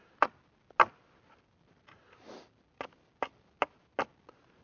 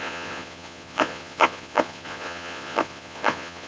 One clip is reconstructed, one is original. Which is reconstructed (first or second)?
second